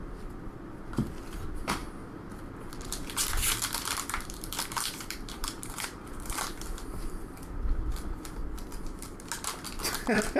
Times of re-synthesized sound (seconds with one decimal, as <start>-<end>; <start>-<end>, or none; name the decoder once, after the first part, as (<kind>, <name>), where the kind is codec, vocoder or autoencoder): 0.0-1.8 (vocoder, BigVGAN v2); 3.2-8.4; 9.7-10.4